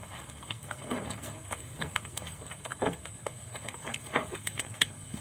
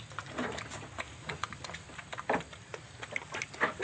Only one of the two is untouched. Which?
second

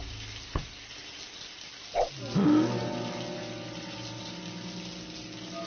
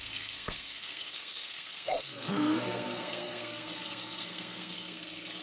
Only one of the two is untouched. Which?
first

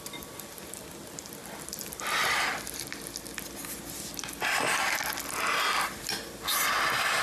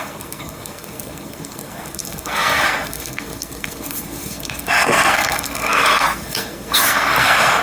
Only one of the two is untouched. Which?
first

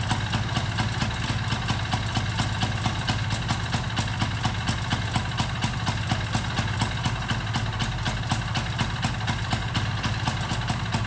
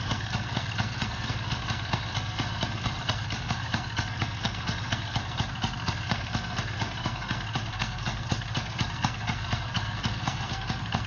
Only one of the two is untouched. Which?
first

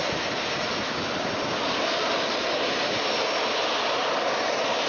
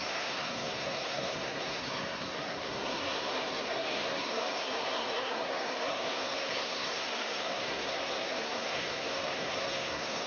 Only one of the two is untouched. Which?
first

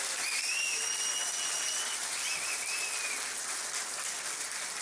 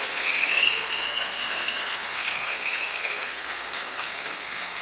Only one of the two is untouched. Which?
first